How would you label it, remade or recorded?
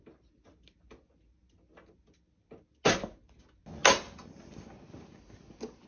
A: recorded